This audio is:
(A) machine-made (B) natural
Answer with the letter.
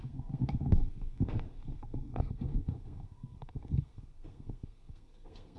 A